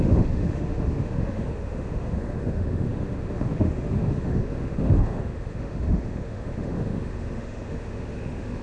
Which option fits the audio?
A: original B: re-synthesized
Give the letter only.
B